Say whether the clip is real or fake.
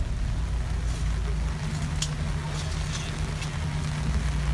real